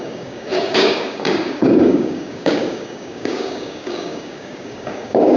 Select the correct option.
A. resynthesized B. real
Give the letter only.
A